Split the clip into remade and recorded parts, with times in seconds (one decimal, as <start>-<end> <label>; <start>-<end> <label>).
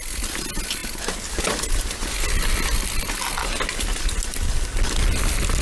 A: 0.0-5.6 recorded